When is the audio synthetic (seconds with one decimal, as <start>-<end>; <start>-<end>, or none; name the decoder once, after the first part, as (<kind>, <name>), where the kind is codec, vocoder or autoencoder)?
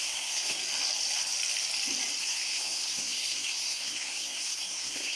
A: 0.0-0.6 (codec, SNAC); 2.2-5.2